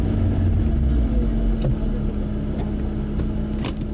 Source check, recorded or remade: recorded